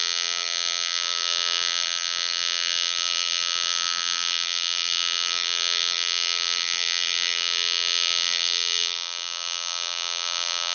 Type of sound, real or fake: fake